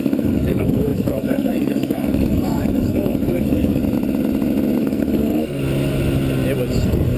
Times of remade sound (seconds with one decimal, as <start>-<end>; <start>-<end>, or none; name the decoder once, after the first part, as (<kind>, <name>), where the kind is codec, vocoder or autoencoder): 0.0-3.8 (codec, SNAC); 4.8-5.6; 6.8-7.2